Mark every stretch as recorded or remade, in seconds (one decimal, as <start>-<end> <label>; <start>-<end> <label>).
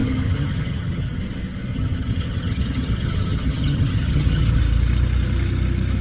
0.0-1.2 remade; 1.2-1.7 recorded; 1.7-4.6 remade; 4.6-6.0 recorded